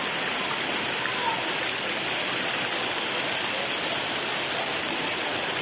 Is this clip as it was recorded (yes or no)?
yes